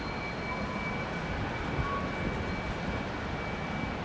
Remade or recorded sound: recorded